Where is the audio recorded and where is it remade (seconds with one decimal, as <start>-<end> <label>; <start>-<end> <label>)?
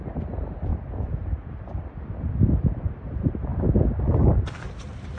0.0-5.2 recorded